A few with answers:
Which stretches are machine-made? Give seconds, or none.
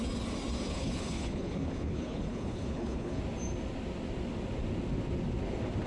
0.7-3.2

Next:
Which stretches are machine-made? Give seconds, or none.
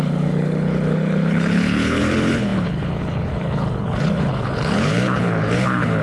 0.0-6.0